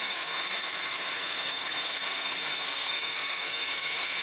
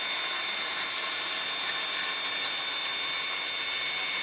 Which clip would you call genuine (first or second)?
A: second